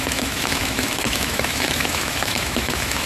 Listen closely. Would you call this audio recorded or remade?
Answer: remade